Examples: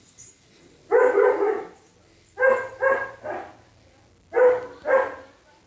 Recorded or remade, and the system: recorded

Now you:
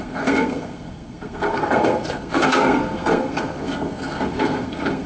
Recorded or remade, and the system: remade, codec, SNAC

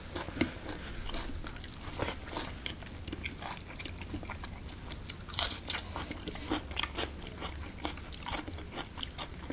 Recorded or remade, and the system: recorded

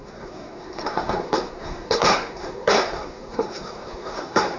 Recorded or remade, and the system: remade, codec, SNAC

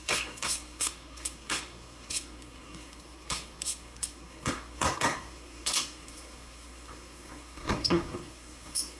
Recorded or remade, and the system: remade, codec, SNAC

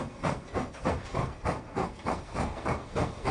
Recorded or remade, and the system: remade, codec, SNAC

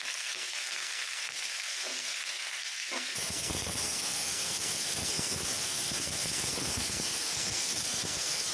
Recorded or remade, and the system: remade, codec, SNAC